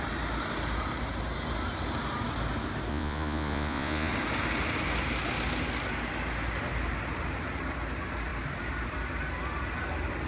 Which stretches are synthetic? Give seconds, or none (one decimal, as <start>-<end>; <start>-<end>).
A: 2.9-4.1